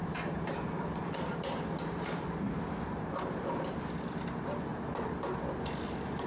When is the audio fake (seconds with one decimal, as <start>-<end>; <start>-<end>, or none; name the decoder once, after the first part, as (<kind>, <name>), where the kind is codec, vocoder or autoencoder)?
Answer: 0.0-3.8 (vocoder, BigVGAN v2); 4.7-5.5